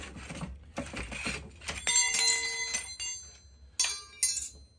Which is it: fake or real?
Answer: real